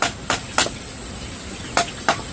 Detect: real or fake real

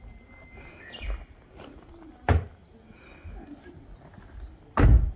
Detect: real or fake real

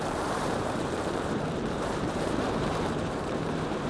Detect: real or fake fake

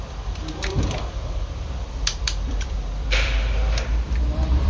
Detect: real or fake fake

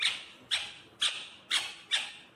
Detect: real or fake real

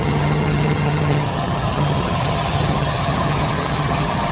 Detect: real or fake fake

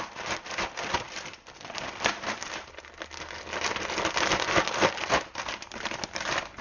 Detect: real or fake real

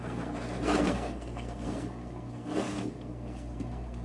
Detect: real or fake fake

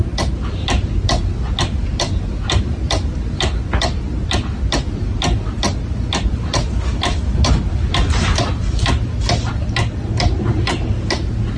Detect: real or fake real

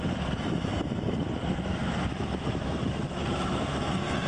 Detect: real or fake fake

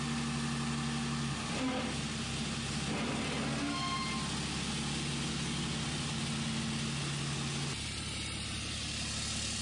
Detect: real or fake real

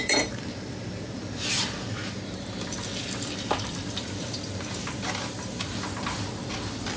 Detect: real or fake fake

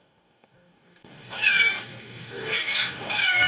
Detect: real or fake fake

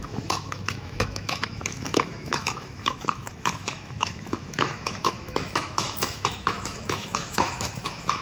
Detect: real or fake fake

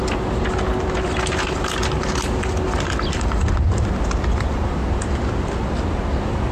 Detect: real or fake real